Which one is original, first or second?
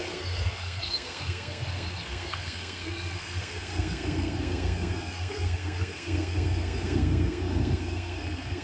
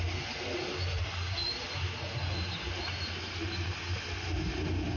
second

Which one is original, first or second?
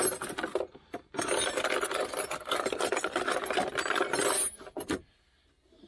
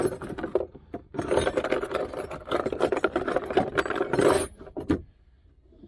first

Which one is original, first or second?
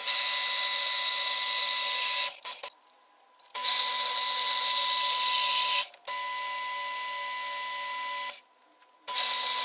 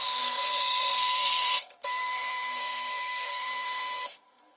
first